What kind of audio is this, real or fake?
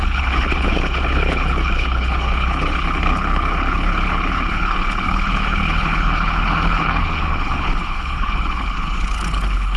fake